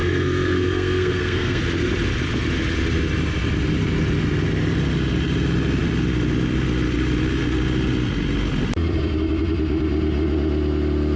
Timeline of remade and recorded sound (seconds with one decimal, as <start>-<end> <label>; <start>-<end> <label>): 0.0-1.6 remade; 1.6-11.2 recorded